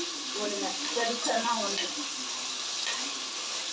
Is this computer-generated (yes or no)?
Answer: yes